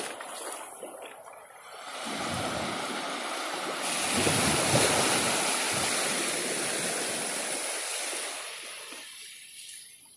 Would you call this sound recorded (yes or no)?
yes